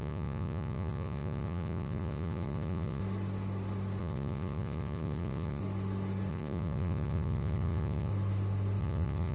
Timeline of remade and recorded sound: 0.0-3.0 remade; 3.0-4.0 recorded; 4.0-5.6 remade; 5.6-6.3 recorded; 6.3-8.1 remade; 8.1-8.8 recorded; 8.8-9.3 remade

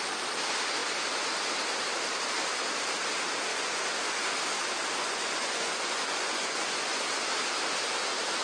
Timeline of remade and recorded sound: 0.0-3.5 recorded; 3.5-4.3 remade; 4.3-5.0 recorded; 5.0-7.0 remade; 7.0-8.4 recorded

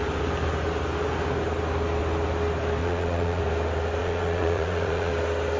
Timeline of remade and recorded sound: 0.0-2.8 recorded; 2.8-3.4 remade; 3.4-4.0 recorded; 4.0-5.1 remade; 5.1-5.6 recorded

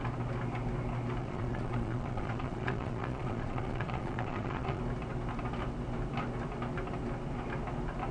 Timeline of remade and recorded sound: 0.0-1.2 recorded; 1.2-4.8 remade; 4.8-8.1 recorded